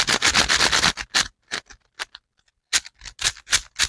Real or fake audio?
real